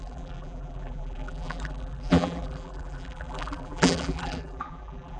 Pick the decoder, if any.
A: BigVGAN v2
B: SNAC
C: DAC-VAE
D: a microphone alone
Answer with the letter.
A